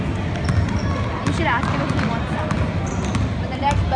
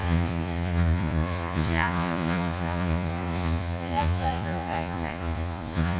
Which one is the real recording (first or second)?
first